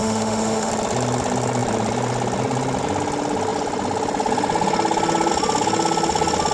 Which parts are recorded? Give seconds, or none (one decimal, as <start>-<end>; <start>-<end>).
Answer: 0.7-6.5